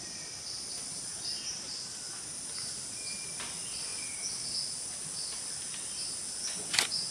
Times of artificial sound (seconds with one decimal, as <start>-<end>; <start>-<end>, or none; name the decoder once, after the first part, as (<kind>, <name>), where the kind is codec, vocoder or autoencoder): 6.4-7.1 (vocoder, Vocos)